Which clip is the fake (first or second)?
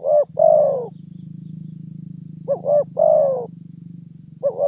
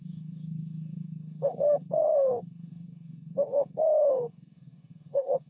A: second